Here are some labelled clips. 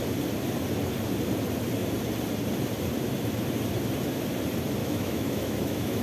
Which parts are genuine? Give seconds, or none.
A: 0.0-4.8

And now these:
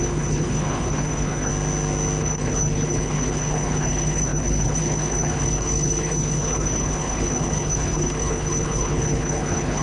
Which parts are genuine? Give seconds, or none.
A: 1.5-2.2